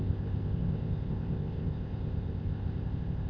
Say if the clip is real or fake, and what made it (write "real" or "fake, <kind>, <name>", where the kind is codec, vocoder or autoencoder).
fake, codec, ZipCodec